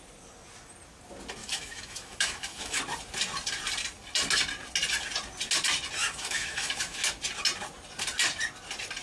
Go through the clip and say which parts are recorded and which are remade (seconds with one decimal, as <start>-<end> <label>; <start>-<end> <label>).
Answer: 0.0-1.4 recorded; 1.4-2.8 remade; 2.8-6.0 recorded; 6.0-7.1 remade; 7.1-9.0 recorded